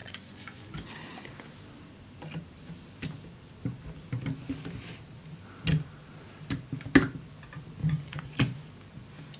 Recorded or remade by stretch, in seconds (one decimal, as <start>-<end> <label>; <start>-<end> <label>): 0.0-0.7 remade; 0.7-7.8 recorded; 7.8-8.7 remade; 8.7-9.4 recorded

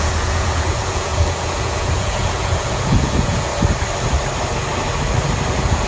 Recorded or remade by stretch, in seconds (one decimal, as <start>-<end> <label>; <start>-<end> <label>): 0.0-3.5 remade; 3.5-5.5 recorded; 5.5-5.9 remade

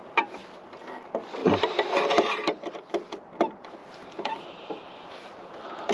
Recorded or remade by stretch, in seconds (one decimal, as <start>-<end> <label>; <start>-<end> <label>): 0.0-1.4 recorded; 1.4-2.9 remade; 2.9-3.8 recorded; 3.8-5.1 remade; 5.1-5.9 recorded